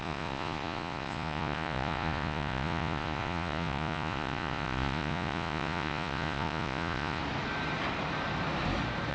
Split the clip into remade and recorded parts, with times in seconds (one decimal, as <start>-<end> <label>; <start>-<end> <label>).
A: 0.0-7.2 remade; 7.2-9.1 recorded